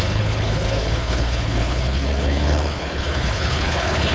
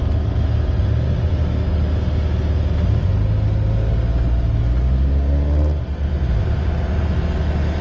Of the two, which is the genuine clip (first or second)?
second